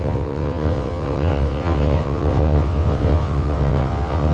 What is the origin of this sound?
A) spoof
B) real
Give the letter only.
A